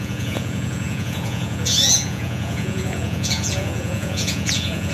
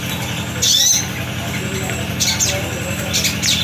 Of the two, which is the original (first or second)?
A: second